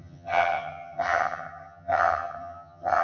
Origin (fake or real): fake